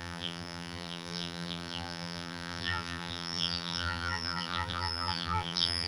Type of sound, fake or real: fake